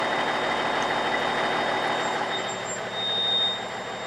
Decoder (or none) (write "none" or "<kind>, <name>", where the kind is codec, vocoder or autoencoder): none